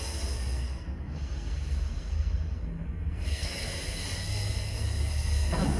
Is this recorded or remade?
remade